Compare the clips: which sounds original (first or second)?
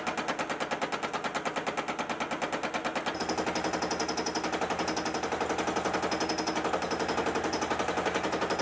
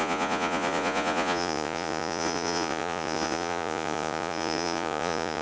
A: first